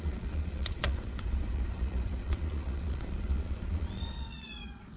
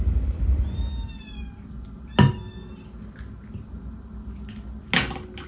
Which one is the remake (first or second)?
first